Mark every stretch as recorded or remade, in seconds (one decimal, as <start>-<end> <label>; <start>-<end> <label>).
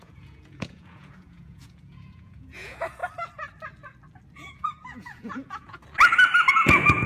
0.0-3.0 remade; 3.0-4.4 recorded; 4.4-5.8 remade; 5.8-6.5 recorded; 6.5-7.1 remade